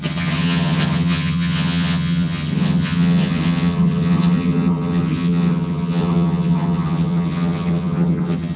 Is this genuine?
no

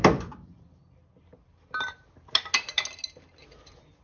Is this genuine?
yes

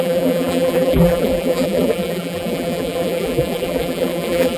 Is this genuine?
no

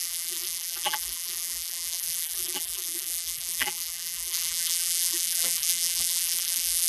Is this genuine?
no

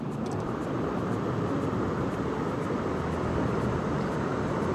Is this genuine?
yes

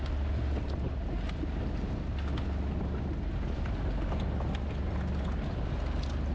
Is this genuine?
yes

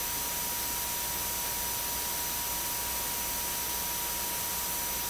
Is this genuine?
yes